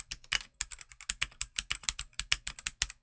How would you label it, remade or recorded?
recorded